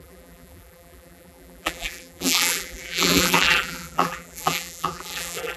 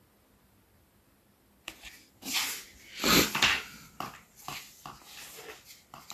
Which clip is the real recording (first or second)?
second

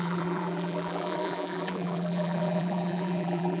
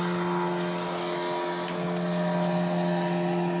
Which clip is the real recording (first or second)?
second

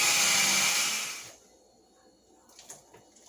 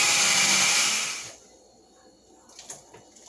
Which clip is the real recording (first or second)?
first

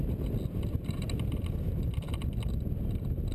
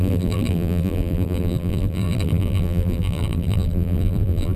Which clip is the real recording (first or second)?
first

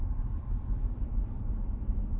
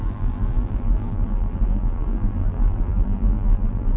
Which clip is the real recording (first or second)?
first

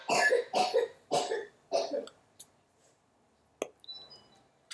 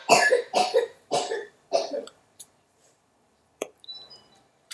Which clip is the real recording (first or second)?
first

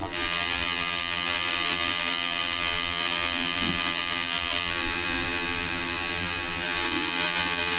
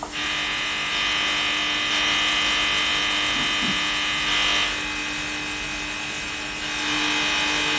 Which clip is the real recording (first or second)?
second